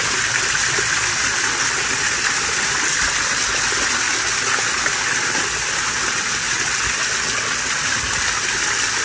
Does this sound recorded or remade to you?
recorded